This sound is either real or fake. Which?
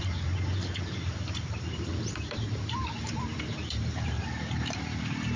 fake